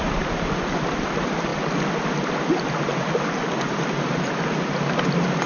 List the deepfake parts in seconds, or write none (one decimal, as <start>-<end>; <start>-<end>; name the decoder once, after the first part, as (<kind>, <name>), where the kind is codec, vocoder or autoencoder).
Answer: none